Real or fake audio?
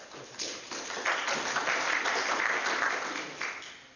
real